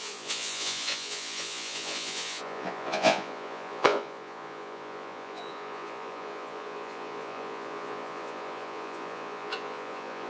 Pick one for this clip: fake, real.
fake